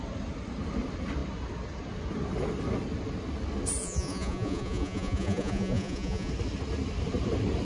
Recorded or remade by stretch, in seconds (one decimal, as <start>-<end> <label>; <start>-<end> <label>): 0.0-3.8 recorded; 3.8-6.3 remade; 6.3-7.6 recorded